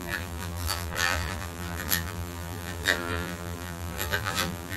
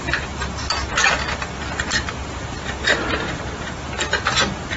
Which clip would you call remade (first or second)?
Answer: first